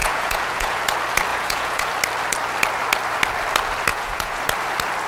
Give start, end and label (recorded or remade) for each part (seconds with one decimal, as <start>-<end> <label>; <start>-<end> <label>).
0.0-0.8 remade; 0.8-1.3 recorded; 1.3-1.9 remade; 1.9-3.9 recorded; 3.9-4.4 remade; 4.4-5.1 recorded